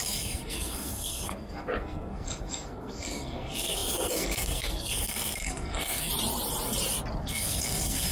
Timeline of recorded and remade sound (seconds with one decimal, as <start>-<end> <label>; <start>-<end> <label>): 0.0-6.1 remade; 6.1-7.2 recorded; 7.2-8.1 remade